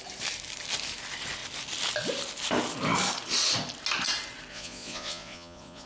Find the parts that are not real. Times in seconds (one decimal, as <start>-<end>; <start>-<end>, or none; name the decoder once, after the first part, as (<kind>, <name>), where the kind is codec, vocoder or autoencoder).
4.5-5.9 (vocoder, Vocos)